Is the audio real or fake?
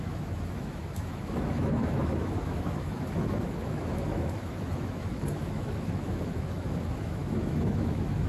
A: fake